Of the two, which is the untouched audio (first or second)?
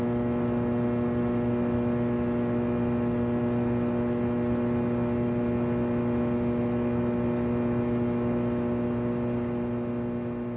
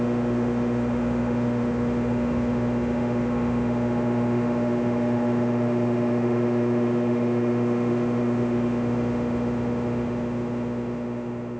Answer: first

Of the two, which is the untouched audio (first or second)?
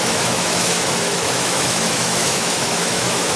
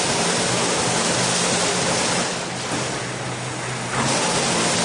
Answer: second